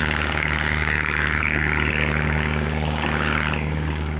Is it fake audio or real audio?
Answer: fake